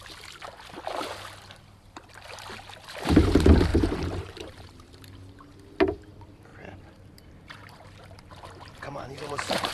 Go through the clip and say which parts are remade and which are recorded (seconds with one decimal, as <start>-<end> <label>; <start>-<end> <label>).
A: 0.0-3.7 recorded; 3.7-4.9 remade; 4.9-6.5 recorded; 6.5-9.7 remade